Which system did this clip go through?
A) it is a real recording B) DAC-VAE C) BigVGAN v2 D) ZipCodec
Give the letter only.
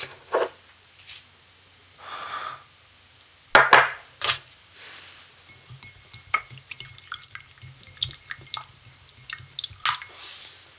A